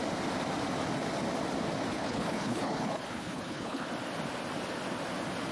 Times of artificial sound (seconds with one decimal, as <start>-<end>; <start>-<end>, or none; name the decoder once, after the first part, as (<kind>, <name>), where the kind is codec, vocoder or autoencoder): 1.9-3.9 (codec, HILCodec)